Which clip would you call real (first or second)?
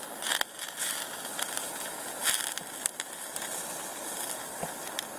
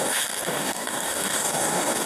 first